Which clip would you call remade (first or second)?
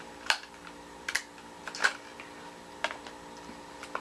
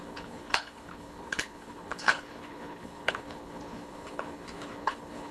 second